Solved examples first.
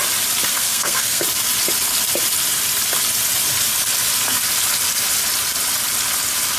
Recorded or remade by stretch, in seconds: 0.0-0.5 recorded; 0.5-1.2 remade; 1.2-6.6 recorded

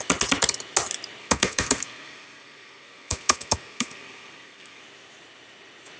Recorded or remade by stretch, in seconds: 0.0-1.2 recorded; 1.2-4.8 remade; 4.8-6.0 recorded